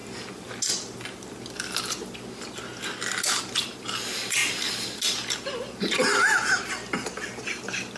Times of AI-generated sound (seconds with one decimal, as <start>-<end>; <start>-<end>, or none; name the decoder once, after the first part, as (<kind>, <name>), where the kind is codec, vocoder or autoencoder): none

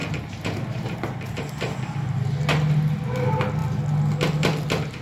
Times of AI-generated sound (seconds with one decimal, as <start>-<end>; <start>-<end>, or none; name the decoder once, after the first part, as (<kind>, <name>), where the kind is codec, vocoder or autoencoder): 0.0-1.5 (vocoder, BigVGAN v2)